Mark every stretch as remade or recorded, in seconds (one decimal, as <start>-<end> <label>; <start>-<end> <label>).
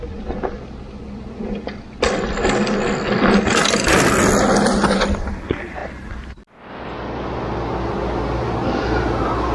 0.0-9.5 recorded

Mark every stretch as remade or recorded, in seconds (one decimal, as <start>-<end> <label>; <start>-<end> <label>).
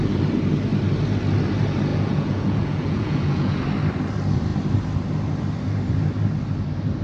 0.0-1.9 recorded; 1.9-3.6 remade; 3.6-7.0 recorded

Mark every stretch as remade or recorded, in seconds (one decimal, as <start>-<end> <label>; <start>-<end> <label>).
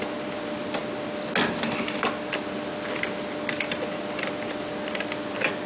0.0-5.7 recorded